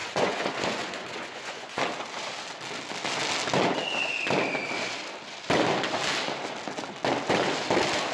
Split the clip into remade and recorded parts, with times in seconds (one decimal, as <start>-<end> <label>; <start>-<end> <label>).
0.0-1.8 remade; 1.8-8.1 recorded